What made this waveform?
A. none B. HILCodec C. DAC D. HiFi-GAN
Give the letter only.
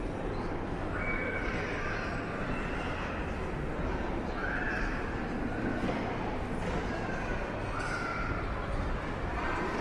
A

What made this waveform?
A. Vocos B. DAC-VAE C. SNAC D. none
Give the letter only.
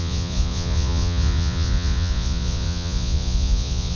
A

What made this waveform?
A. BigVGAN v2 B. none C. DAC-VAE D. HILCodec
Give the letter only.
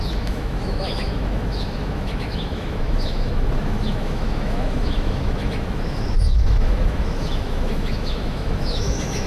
C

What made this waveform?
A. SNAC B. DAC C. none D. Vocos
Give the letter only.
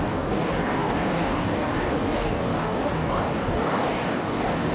B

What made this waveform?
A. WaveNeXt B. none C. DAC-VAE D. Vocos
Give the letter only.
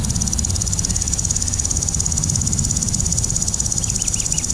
B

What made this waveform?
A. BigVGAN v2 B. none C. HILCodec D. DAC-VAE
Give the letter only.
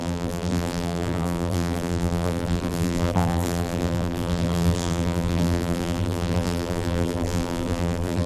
A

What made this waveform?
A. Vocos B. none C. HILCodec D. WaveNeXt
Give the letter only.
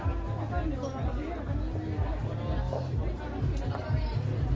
B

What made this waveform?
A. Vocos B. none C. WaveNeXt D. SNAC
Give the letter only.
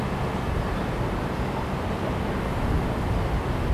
B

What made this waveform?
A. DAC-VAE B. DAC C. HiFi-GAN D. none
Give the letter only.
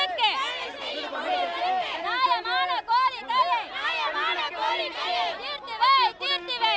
D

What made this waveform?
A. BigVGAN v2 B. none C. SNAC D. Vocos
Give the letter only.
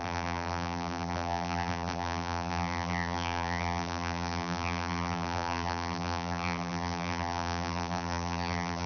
A